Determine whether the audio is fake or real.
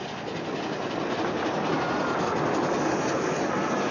real